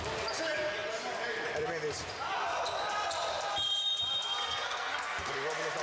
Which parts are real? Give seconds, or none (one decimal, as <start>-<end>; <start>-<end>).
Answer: 0.0-4.4; 5.3-5.8